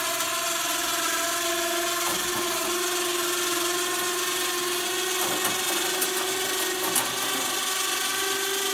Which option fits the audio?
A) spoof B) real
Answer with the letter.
B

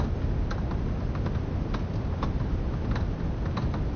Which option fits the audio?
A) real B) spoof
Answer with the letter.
A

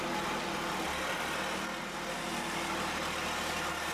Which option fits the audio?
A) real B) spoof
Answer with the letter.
A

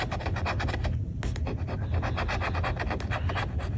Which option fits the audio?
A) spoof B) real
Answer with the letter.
B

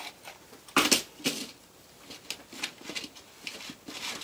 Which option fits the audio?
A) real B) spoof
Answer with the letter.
A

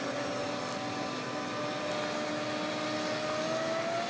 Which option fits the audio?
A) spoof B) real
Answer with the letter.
B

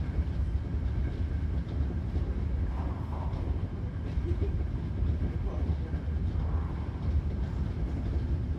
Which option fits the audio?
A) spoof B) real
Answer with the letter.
B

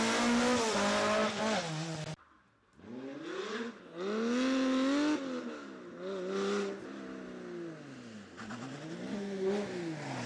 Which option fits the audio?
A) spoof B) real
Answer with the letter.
B